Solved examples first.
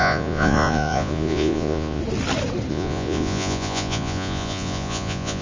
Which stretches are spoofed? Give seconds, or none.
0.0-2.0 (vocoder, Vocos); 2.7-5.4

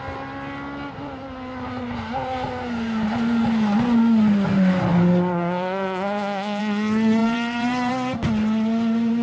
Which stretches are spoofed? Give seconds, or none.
7.2-7.9 (vocoder, BigVGAN v2)

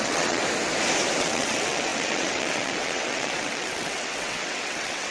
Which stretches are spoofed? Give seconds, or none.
0.0-0.4 (vocoder, WaveNeXt); 1.2-5.1

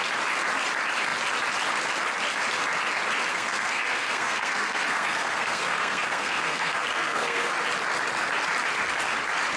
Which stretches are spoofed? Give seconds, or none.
3.3-7.5 (codec, SNAC)